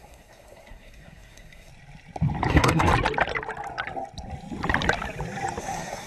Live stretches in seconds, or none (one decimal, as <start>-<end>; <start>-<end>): 1.7-2.5; 2.9-5.6